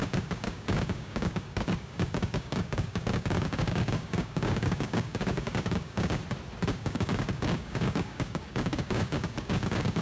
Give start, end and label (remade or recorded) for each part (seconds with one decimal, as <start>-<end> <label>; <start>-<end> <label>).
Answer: 0.0-6.2 remade; 6.2-6.7 recorded; 6.7-10.0 remade

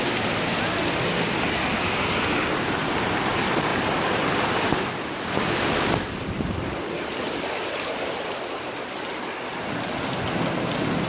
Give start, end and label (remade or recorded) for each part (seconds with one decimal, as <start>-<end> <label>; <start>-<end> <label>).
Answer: 0.0-11.1 recorded

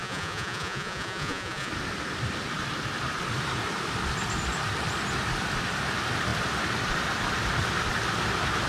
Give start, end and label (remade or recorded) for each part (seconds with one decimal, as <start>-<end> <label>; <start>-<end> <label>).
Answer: 0.0-1.7 remade; 1.7-8.7 recorded

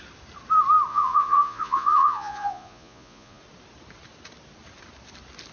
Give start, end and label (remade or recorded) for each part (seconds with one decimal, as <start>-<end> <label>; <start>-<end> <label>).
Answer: 0.0-0.9 recorded; 0.9-3.4 remade; 3.4-5.5 recorded

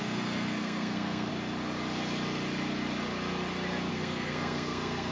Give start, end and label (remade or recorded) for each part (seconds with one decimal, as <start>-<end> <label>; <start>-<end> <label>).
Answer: 0.0-1.3 remade; 1.3-3.9 recorded; 3.9-5.1 remade

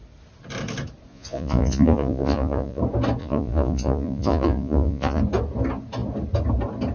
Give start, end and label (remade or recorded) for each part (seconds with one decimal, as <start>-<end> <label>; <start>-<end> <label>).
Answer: 0.0-1.1 recorded; 1.1-2.8 remade; 2.8-3.2 recorded; 3.2-5.2 remade; 5.2-6.9 recorded